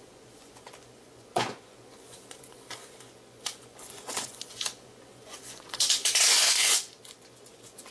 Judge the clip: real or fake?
fake